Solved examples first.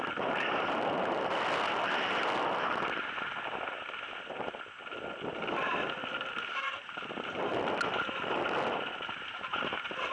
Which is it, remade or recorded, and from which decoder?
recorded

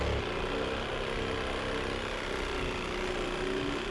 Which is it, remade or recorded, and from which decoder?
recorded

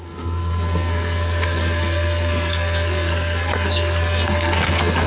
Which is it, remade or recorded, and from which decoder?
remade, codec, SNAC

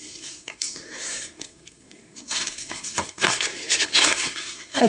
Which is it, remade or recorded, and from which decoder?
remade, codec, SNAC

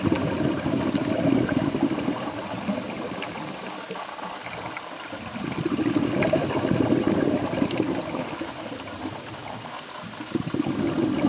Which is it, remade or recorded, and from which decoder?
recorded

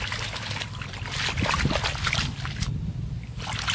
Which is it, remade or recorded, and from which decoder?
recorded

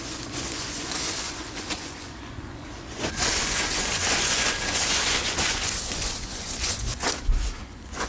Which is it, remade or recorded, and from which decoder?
remade, vocoder, Vocos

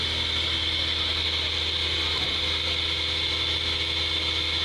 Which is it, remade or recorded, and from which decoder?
recorded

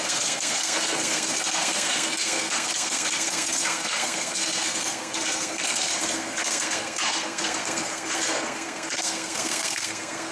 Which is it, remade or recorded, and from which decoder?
remade, codec, SNAC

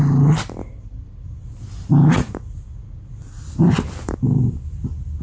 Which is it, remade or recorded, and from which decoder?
remade, vocoder, BigVGAN v2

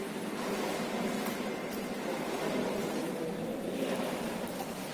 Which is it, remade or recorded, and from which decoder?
recorded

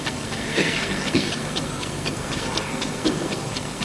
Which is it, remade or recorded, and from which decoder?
remade, codec, SNAC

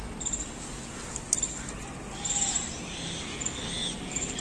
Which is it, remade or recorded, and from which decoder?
recorded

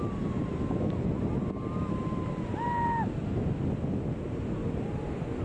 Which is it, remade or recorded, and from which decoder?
recorded